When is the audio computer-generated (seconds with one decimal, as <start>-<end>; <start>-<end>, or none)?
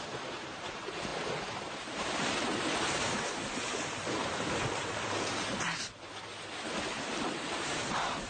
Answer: 0.0-8.3